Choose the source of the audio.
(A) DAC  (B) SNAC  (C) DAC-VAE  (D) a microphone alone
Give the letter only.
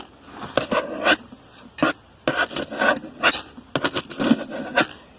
D